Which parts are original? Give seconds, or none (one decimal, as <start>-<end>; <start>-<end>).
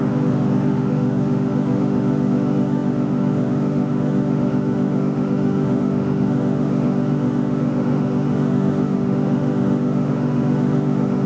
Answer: none